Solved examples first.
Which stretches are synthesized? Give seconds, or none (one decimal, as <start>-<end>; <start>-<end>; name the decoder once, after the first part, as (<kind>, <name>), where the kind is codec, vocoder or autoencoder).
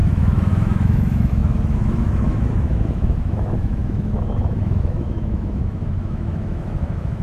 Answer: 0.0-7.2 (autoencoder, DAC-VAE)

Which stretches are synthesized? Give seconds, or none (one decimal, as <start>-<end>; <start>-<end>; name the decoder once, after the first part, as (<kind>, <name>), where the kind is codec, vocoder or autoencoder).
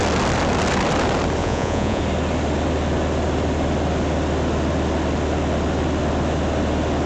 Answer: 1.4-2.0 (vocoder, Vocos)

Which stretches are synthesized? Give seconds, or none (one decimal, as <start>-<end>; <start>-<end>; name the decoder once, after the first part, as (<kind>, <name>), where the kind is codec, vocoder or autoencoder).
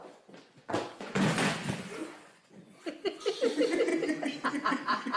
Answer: 0.0-3.9 (vocoder, Vocos); 4.5-5.2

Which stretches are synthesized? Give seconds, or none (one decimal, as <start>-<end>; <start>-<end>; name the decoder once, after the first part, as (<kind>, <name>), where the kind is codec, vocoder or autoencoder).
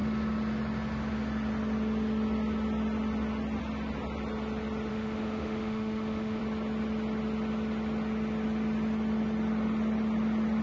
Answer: 4.9-6.4 (autoencoder, DAC-VAE)